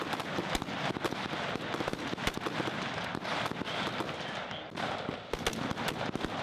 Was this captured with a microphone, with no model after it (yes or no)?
yes